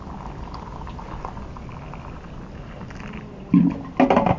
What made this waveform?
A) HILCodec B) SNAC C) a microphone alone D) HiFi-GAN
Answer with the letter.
C